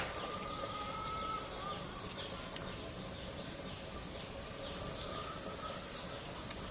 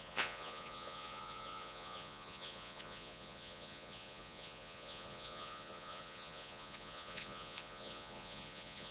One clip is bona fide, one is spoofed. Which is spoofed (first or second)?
second